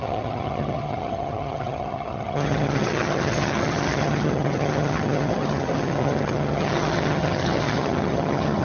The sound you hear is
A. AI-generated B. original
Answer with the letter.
A